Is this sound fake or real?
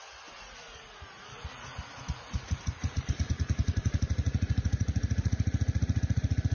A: fake